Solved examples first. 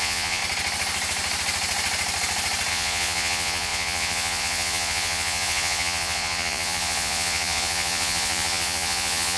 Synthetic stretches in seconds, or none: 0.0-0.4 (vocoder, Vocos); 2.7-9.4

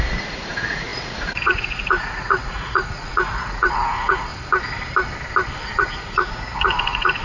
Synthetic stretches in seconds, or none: 0.0-4.3 (vocoder, Vocos); 5.7-7.2

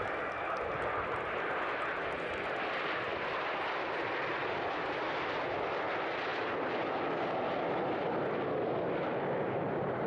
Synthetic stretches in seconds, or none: none

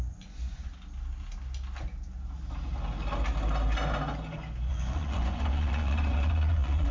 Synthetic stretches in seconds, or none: 0.0-0.7 (vocoder, Vocos); 4.7-6.9